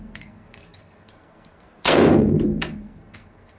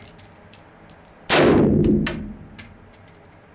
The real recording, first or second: second